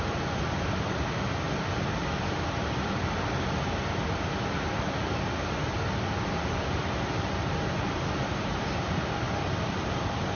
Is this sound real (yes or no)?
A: yes